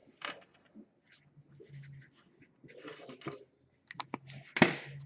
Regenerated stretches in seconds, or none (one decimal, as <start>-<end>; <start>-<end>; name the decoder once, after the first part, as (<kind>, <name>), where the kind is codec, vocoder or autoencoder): none